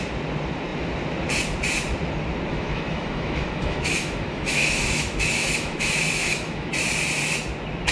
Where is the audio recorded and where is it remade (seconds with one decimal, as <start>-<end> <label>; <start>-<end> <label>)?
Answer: 0.0-2.5 recorded; 2.5-6.7 remade; 6.7-7.9 recorded